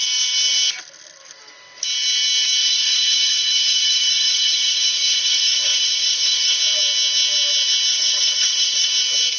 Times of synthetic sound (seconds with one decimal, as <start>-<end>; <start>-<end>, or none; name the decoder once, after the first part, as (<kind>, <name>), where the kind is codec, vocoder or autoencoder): 2.6-6.6 (codec, HILCodec); 7.9-8.9